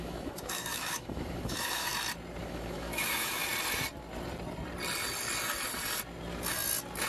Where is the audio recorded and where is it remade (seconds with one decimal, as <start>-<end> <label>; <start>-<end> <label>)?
0.0-1.9 remade; 1.9-2.4 recorded; 2.4-3.4 remade; 3.4-7.1 recorded